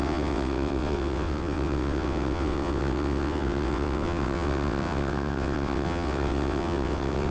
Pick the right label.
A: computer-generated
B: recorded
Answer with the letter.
A